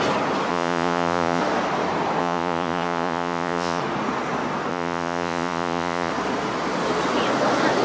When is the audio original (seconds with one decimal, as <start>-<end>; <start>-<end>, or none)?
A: 0.0-0.5; 1.4-2.2; 3.8-4.7; 6.1-7.8